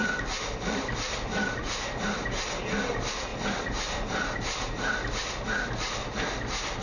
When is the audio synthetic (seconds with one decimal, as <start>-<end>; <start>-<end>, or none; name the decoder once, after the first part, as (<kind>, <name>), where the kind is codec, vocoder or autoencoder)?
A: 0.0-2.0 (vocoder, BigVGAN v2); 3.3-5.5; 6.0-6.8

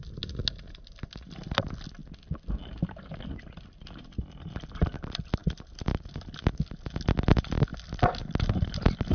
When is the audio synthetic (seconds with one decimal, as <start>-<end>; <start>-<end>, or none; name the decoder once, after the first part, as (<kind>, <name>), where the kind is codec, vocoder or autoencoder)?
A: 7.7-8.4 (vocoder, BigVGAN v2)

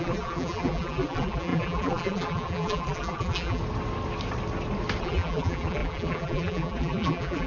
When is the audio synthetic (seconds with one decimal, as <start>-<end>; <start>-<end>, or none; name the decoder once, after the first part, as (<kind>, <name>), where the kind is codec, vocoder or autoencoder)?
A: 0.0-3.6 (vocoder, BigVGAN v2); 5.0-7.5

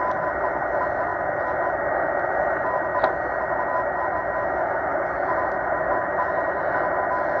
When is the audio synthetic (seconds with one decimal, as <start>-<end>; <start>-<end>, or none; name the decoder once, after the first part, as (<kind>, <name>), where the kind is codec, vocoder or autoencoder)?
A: 4.9-5.7 (vocoder, BigVGAN v2)

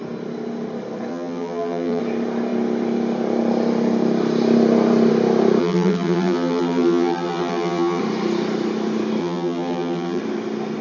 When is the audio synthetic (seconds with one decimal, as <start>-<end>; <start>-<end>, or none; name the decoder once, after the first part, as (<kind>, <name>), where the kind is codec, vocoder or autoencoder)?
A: 1.1-2.0 (vocoder, BigVGAN v2); 5.6-8.0; 9.2-10.2

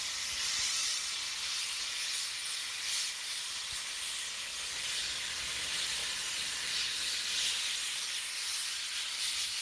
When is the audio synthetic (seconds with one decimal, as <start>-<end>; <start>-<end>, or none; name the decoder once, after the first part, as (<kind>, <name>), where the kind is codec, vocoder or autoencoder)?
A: 4.5-5.4 (vocoder, BigVGAN v2)

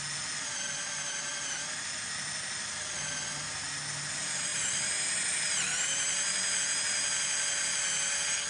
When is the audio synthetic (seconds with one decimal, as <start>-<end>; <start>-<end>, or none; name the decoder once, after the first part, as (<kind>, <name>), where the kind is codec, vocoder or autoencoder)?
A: 4.5-6.6 (vocoder, BigVGAN v2)